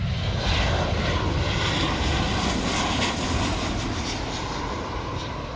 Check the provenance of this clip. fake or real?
real